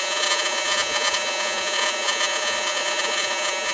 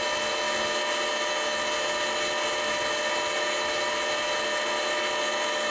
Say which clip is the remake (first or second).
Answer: first